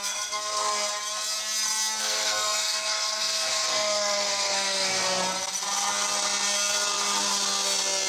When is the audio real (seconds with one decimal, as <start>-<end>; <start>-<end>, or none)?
0.6-2.0; 5.0-8.1